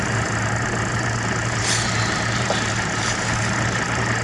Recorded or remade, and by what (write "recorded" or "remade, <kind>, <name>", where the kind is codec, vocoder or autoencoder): recorded